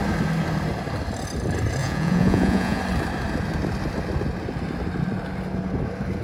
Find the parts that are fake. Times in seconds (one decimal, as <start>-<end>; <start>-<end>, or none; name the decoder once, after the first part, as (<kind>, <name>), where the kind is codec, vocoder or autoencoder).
1.8-2.8 (vocoder, Vocos)